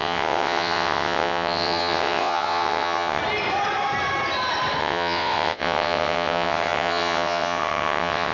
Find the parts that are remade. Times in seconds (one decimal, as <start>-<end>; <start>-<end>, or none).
0.0-3.2; 4.8-8.3